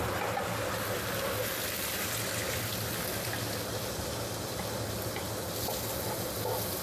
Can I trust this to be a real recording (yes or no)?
yes